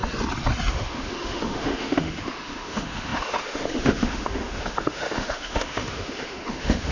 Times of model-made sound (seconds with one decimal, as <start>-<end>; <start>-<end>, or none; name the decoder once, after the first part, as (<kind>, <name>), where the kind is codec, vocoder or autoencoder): 0.7-6.9 (autoencoder, DAC-VAE)

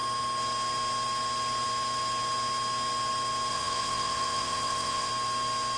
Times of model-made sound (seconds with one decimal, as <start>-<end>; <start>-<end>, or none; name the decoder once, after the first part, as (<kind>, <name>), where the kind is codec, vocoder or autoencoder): 3.5-5.1 (vocoder, WaveNeXt)

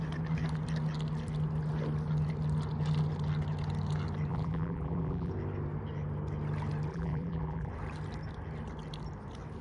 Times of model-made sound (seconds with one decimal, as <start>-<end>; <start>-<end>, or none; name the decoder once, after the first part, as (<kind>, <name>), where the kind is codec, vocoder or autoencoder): 4.3-5.3 (vocoder, BigVGAN v2); 6.9-7.7

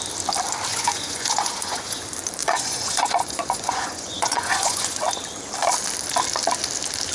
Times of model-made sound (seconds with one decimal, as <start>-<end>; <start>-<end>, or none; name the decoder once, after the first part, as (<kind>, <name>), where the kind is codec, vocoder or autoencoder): 0.7-2.0 (vocoder, Vocos); 2.4-5.0

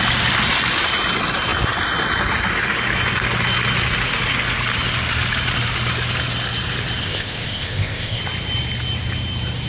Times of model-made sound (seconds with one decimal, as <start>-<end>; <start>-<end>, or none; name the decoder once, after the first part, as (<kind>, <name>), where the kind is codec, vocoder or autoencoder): 7.0-8.2 (codec, ZipCodec)

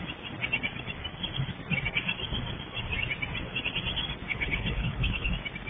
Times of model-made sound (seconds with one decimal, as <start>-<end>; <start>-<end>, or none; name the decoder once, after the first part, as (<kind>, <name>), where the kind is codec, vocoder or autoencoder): 4.3-5.3 (codec, HILCodec)

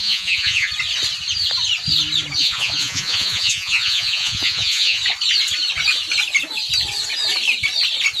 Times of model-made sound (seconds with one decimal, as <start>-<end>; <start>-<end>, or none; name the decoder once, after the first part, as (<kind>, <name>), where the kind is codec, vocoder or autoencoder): 0.0-0.7 (vocoder, Vocos); 2.4-5.0